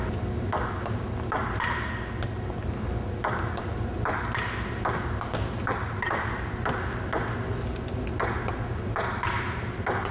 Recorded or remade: recorded